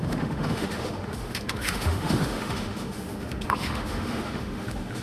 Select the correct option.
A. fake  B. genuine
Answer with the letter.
A